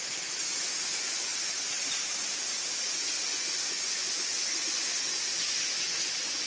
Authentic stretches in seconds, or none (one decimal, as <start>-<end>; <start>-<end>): 1.3-2.9